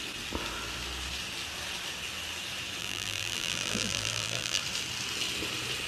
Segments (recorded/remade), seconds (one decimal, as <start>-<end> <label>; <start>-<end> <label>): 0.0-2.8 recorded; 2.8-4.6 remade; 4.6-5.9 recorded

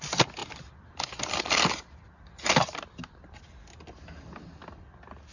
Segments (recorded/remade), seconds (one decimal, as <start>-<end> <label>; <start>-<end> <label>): 0.0-5.3 recorded

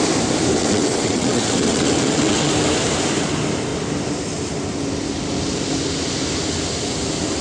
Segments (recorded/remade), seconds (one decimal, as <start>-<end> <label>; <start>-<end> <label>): 0.0-0.6 recorded; 0.6-2.5 remade; 2.5-7.4 recorded

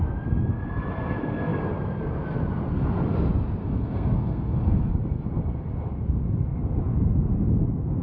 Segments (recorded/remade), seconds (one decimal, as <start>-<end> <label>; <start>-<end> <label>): 0.0-3.6 recorded; 3.6-4.9 remade; 4.9-8.0 recorded